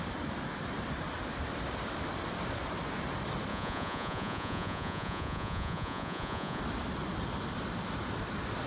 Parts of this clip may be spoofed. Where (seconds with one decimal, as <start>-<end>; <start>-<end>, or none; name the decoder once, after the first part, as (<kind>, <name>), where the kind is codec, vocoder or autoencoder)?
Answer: 3.5-6.6 (vocoder, Vocos)